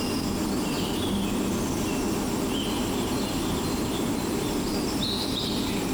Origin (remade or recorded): recorded